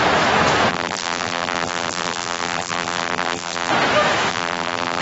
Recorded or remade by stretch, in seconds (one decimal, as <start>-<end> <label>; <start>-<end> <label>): 0.0-0.7 recorded; 0.7-3.7 remade; 3.7-4.3 recorded; 4.3-5.0 remade